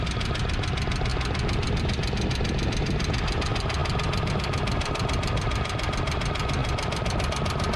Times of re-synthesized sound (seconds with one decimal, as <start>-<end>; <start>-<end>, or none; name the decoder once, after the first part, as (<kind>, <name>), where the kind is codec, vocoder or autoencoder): none